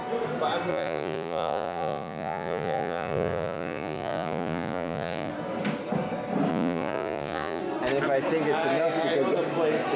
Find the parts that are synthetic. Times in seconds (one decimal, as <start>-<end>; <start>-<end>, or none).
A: 0.7-5.3; 6.5-7.6